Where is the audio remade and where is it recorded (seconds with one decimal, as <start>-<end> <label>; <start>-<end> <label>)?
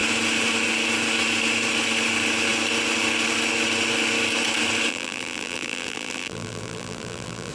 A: 0.0-4.9 recorded; 4.9-7.5 remade